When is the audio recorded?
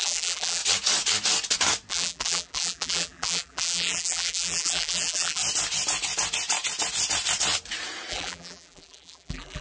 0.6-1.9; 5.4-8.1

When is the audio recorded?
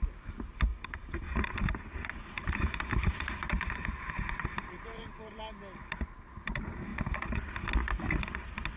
0.0-0.7; 5.4-8.8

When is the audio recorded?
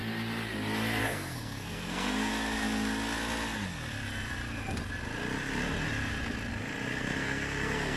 0.0-1.0; 2.3-7.0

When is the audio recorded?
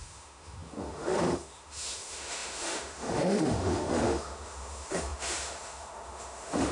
none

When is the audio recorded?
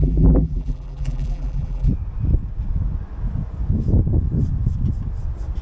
1.9-5.6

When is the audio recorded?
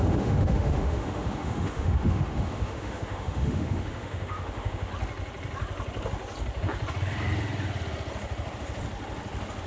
4.9-9.7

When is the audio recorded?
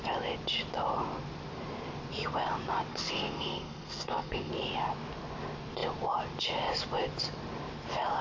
0.0-2.9; 4.5-8.2